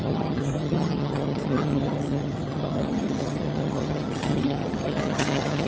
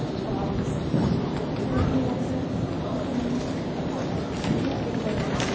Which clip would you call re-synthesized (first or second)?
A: first